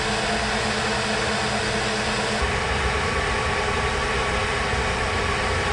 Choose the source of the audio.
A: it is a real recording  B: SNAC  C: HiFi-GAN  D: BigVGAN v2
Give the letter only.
A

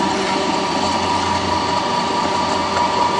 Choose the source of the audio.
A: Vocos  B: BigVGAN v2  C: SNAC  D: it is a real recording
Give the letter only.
D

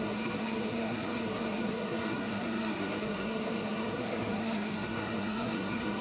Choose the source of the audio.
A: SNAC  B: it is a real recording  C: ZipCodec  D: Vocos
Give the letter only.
A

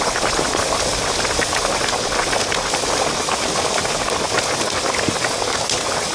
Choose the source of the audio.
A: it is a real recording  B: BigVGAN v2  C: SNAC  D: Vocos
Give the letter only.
A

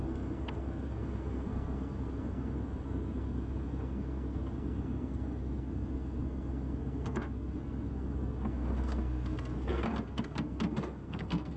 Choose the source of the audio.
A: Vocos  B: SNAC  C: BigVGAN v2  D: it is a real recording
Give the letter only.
B